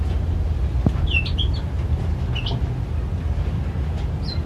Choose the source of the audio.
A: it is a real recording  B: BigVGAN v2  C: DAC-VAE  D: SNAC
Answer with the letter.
A